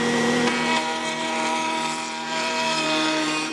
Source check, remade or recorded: remade